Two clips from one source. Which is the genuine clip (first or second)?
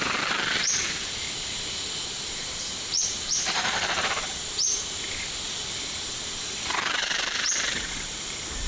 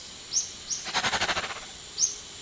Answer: second